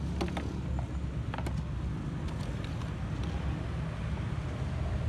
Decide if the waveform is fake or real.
real